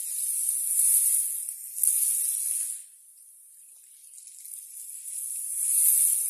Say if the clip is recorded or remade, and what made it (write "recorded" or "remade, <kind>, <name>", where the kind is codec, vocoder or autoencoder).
recorded